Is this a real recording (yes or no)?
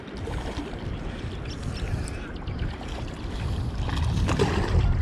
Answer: yes